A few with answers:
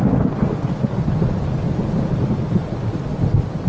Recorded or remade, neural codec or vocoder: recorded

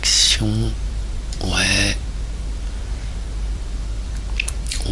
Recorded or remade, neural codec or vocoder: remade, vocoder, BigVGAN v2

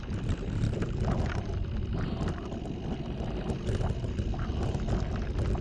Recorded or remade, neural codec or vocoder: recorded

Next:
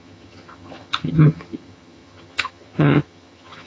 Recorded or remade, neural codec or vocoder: remade, vocoder, HiFi-GAN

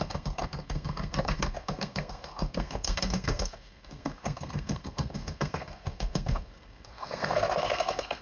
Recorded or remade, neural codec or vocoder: remade, codec, SNAC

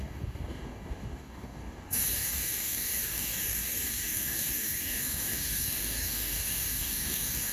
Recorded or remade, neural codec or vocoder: remade, codec, DAC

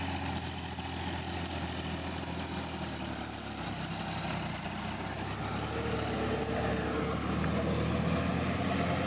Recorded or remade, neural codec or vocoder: recorded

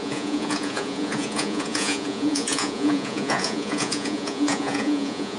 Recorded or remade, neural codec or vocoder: remade, vocoder, Vocos